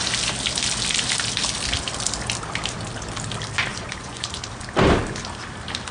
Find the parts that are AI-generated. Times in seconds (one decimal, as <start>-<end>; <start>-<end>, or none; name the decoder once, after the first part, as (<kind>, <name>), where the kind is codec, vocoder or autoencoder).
3.7-4.4 (vocoder, Vocos)